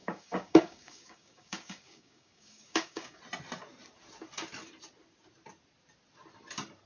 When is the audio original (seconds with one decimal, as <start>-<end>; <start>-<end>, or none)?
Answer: 3.2-6.9